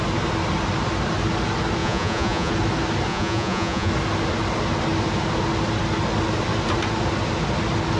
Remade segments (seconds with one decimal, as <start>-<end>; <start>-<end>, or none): 1.8-2.5; 3.1-3.9